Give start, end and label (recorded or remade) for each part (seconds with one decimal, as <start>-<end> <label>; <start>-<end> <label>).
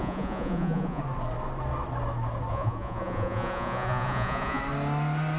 0.0-1.0 remade; 1.0-2.5 recorded; 2.5-4.6 remade; 4.6-5.4 recorded